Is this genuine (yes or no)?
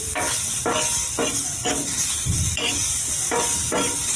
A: yes